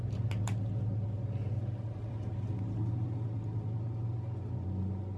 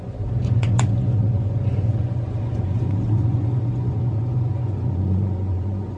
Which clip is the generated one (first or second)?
second